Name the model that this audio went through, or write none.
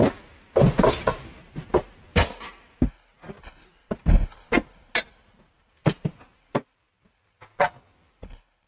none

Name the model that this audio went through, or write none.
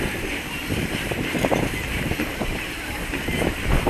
vocoder, BigVGAN v2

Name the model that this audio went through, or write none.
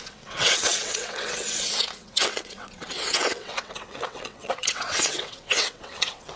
vocoder, WaveNeXt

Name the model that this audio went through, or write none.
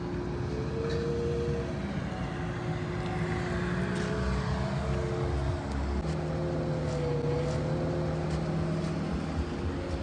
none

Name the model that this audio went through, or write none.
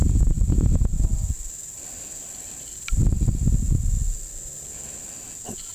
none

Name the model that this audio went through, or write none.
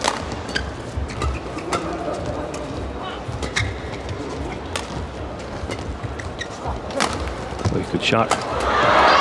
none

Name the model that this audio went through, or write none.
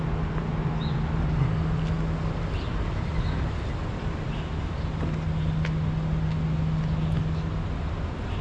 none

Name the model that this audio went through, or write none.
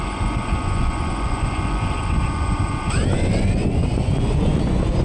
vocoder, Vocos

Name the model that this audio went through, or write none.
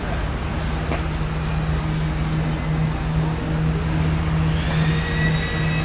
none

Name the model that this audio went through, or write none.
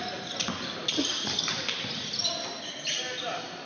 none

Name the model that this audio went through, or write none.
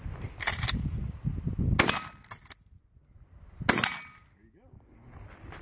none